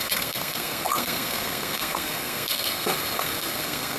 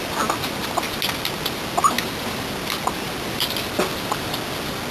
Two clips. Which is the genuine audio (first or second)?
second